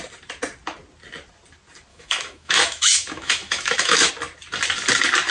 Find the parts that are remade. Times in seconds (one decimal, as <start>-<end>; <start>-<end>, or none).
1.9-4.1